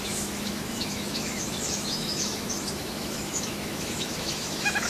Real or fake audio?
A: fake